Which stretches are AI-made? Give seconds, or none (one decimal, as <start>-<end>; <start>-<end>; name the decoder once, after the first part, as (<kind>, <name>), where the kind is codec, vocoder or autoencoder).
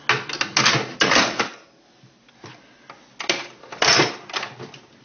none